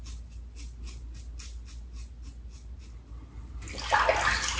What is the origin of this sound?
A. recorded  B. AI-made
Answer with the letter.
A